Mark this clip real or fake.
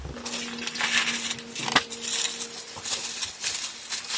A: real